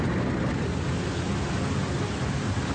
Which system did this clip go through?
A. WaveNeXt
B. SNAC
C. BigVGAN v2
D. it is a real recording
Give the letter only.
D